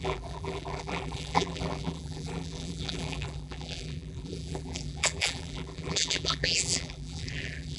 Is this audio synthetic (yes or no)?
yes